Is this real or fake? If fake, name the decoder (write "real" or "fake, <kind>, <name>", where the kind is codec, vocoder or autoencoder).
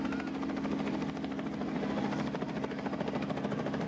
real